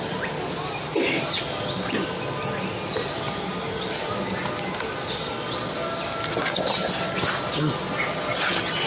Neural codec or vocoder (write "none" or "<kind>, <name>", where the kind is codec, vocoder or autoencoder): none